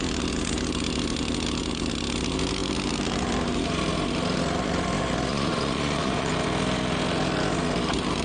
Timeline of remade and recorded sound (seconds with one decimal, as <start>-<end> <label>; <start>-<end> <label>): 0.0-5.3 recorded; 5.3-6.3 remade; 6.3-8.2 recorded